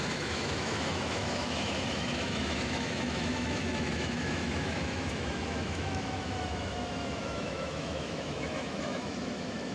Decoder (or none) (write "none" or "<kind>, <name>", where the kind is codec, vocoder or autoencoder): autoencoder, DAC-VAE